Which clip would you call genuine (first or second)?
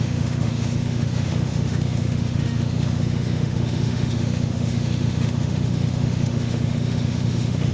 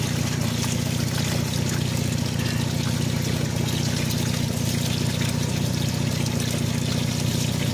second